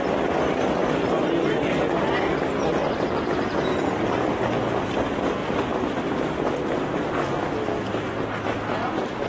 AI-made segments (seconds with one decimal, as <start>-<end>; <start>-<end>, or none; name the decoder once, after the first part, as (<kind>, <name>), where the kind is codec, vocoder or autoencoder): none